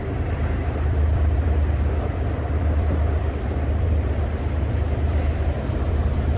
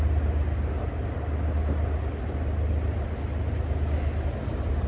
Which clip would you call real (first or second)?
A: second